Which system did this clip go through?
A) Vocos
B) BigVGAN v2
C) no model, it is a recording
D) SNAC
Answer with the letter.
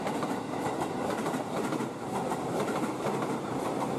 C